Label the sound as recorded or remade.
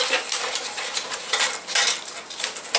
recorded